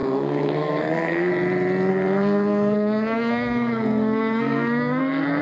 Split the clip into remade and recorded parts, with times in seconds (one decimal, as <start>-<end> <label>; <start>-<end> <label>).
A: 0.0-1.3 remade; 1.3-1.9 recorded; 1.9-5.4 remade